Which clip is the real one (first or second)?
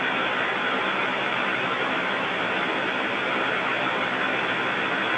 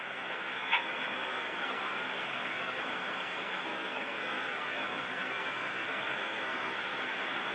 first